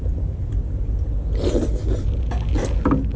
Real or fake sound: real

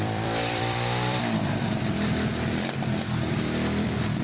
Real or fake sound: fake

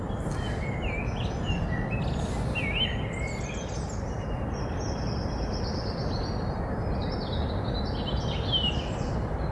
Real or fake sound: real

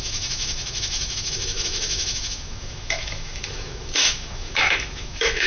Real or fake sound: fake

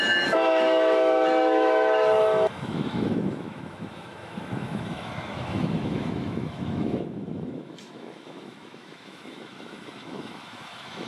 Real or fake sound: fake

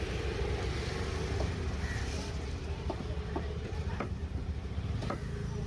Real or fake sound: real